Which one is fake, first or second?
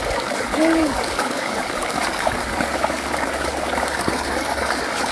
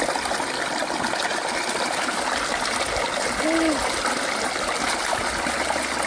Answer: first